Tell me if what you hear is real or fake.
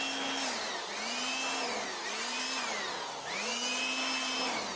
real